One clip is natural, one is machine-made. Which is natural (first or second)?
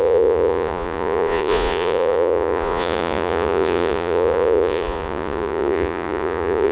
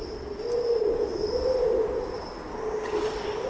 second